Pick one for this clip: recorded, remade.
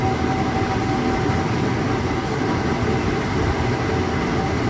recorded